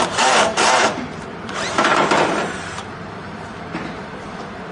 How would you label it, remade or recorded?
remade